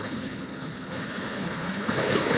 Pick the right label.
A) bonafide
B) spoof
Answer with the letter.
B